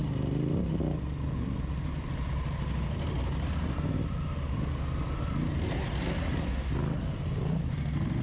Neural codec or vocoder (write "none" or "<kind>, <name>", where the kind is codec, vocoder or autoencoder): none